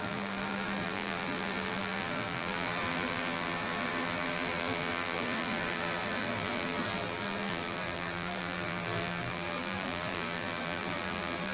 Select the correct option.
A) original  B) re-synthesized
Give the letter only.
B